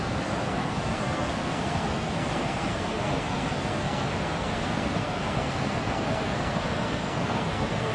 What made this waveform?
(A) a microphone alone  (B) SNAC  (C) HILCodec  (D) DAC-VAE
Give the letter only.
B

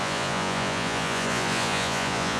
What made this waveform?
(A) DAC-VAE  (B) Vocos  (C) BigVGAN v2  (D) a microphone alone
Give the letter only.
B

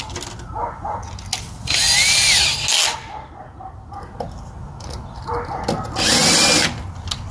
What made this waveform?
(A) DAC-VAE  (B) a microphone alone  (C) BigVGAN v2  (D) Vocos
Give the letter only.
B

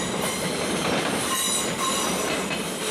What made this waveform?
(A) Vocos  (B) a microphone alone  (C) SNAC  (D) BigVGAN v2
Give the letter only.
D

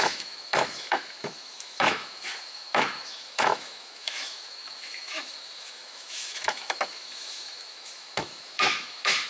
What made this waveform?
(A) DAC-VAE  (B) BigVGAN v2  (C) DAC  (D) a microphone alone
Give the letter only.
A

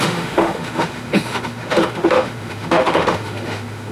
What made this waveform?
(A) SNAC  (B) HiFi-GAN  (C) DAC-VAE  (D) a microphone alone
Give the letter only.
C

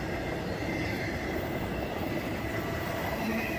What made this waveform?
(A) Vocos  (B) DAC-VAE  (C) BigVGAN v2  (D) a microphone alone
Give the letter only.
C